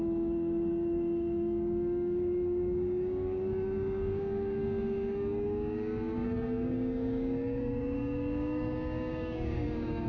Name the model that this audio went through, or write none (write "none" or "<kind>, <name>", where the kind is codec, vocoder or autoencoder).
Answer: codec, DAC